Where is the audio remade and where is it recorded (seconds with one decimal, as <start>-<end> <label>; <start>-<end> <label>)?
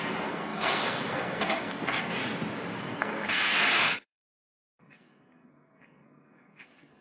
0.0-2.2 remade; 2.2-2.8 recorded; 2.8-7.0 remade